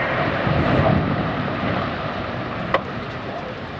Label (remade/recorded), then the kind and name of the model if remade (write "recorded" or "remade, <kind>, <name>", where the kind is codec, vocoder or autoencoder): remade, vocoder, BigVGAN v2